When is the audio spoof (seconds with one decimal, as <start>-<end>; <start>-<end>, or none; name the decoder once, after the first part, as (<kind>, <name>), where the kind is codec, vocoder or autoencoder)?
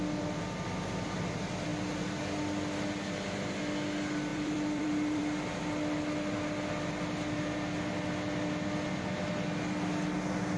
4.3-5.2 (vocoder, BigVGAN v2)